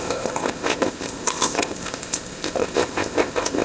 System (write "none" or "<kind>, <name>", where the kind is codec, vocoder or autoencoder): codec, ZipCodec